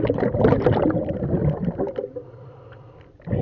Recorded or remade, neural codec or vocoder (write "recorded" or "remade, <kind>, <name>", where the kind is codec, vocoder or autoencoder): recorded